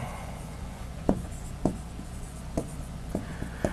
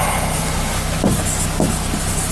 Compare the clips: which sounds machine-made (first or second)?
first